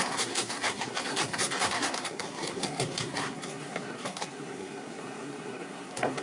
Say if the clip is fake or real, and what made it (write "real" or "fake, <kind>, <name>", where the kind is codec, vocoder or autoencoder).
fake, codec, SNAC